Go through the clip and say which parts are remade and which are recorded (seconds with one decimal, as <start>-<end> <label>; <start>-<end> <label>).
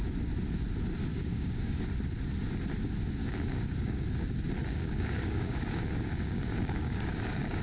0.0-1.1 recorded; 1.1-1.8 remade; 1.8-3.2 recorded; 3.2-4.1 remade; 4.1-4.6 recorded; 4.6-7.6 remade